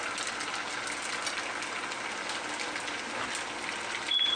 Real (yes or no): yes